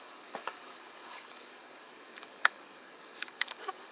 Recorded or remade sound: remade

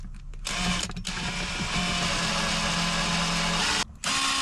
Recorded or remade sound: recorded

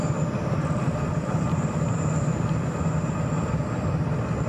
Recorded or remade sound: recorded